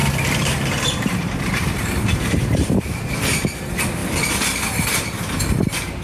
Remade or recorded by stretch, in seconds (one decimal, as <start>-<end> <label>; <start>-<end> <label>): 0.0-2.9 remade; 2.9-6.0 recorded

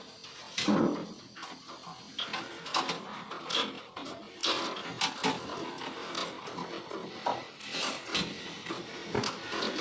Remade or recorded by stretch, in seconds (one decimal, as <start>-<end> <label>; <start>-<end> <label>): 0.0-9.8 recorded